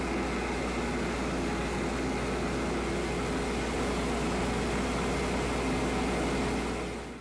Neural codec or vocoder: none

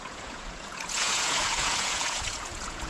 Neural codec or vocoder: vocoder, Vocos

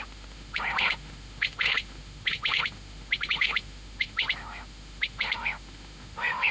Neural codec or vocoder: autoencoder, DAC-VAE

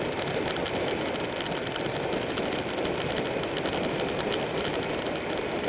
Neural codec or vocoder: none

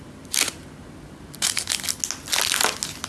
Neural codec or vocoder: none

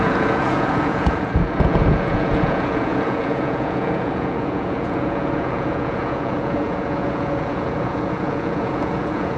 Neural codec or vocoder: vocoder, Vocos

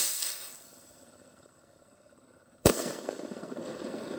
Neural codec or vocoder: codec, SNAC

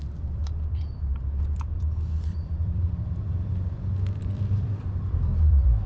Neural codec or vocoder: vocoder, BigVGAN v2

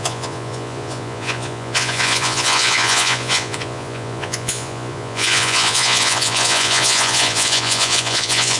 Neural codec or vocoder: vocoder, Vocos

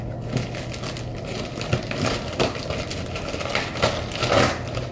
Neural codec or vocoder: none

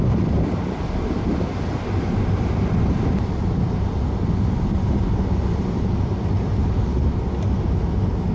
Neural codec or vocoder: none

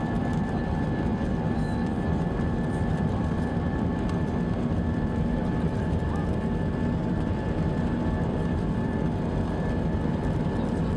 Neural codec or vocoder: vocoder, BigVGAN v2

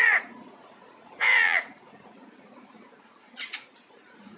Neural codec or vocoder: vocoder, Vocos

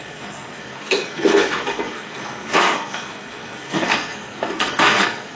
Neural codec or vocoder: codec, SNAC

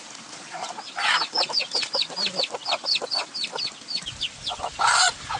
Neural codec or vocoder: none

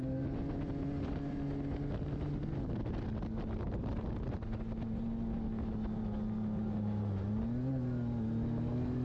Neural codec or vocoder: none